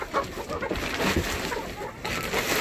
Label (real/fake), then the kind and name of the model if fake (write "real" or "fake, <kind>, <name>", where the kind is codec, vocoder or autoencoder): real